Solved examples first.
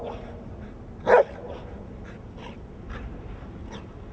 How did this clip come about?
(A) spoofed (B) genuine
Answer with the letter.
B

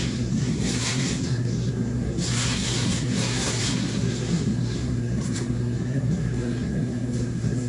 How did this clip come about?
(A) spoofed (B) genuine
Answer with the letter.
A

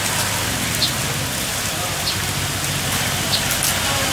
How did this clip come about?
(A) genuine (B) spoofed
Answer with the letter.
A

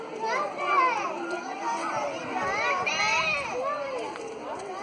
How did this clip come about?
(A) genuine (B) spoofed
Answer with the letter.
A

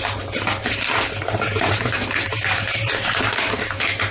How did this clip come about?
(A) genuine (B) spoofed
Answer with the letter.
B